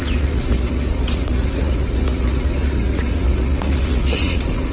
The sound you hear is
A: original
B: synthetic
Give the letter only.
B